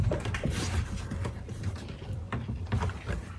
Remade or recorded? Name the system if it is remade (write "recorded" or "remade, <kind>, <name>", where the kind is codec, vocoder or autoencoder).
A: remade, vocoder, BigVGAN v2